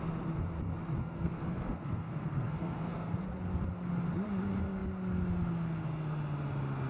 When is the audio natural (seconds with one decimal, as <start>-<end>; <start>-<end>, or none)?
0.0-1.0; 3.3-6.9